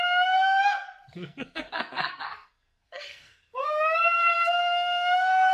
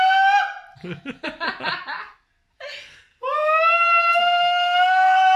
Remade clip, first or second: first